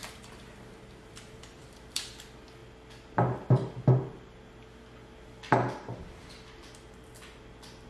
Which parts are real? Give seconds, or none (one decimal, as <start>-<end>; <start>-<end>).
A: 2.1-7.9